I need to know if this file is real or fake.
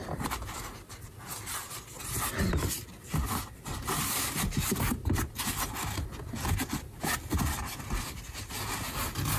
real